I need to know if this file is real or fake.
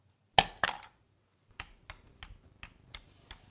real